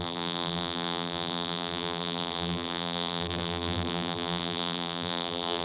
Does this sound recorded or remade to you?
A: remade